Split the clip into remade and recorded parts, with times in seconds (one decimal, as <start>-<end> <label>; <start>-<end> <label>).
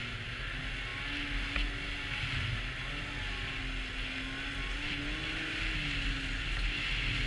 0.0-7.3 recorded